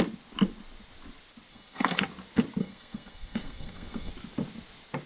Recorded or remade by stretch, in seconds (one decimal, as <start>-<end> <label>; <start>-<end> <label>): 0.0-1.5 recorded; 1.5-2.0 remade; 2.0-2.6 recorded; 2.6-4.1 remade; 4.1-5.1 recorded